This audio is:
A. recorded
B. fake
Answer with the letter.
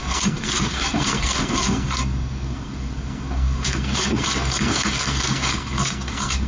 B